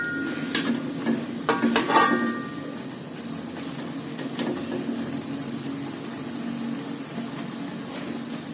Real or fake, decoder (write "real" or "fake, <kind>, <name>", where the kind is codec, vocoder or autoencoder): real